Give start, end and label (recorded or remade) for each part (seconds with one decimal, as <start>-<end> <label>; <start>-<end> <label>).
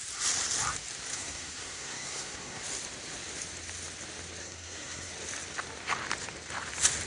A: 0.0-1.1 recorded; 1.1-2.6 remade; 2.6-4.4 recorded; 4.4-5.1 remade; 5.1-7.1 recorded